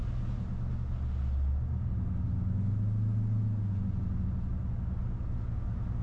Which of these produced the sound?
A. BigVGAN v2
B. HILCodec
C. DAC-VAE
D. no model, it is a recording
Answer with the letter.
D